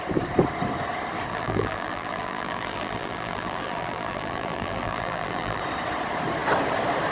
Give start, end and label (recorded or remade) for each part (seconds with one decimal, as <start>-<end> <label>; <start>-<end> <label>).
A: 0.0-1.3 recorded; 1.3-5.6 remade; 5.6-7.1 recorded